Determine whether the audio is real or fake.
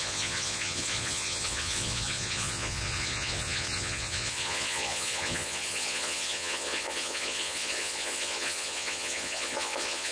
fake